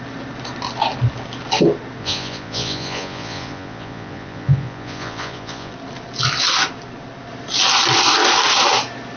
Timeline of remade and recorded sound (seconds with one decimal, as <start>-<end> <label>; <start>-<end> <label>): 0.0-2.0 recorded; 2.0-5.7 remade; 5.7-9.2 recorded